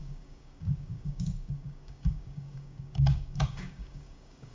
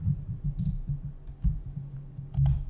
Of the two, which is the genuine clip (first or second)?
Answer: second